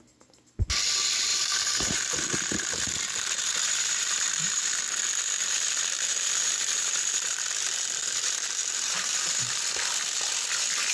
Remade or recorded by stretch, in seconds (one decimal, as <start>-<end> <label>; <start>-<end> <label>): 0.0-1.3 recorded; 1.3-4.8 remade; 4.8-5.4 recorded; 5.4-7.4 remade; 7.4-8.0 recorded; 8.0-9.7 remade; 9.7-10.9 recorded